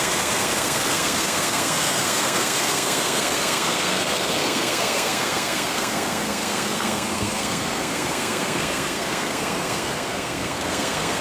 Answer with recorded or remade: remade